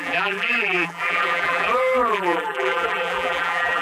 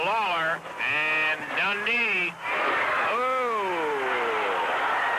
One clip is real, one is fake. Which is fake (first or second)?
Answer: first